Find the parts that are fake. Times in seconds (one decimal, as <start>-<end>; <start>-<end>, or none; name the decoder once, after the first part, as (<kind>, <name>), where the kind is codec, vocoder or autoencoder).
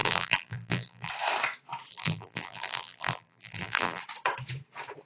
0.0-1.1 (vocoder, BigVGAN v2); 1.9-4.0